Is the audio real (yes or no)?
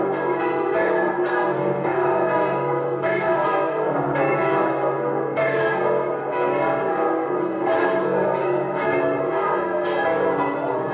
no